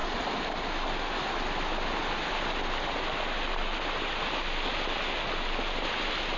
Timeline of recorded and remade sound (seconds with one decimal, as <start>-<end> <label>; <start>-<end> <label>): 0.0-6.4 recorded